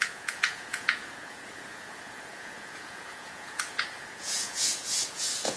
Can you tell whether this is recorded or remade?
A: remade